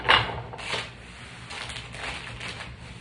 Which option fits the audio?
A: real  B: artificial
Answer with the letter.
A